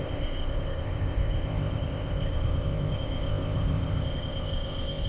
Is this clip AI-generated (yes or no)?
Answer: yes